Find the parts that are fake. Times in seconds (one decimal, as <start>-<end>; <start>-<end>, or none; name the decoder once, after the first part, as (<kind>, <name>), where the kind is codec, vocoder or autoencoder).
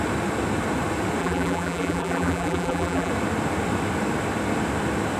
1.2-3.1 (vocoder, BigVGAN v2)